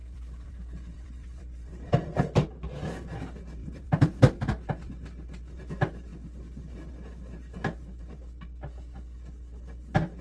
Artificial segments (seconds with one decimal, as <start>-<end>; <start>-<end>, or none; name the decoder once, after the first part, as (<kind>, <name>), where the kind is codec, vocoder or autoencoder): 0.0-2.2 (vocoder, BigVGAN v2); 3.6-4.9